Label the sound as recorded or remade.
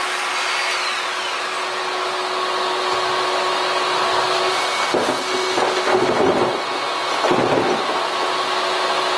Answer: recorded